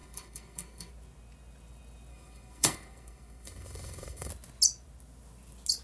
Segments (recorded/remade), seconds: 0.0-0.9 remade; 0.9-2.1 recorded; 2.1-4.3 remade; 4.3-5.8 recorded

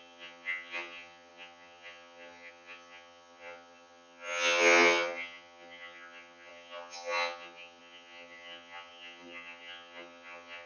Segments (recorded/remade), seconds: 0.0-10.7 remade